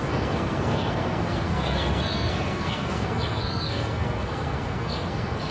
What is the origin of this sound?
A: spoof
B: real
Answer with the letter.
A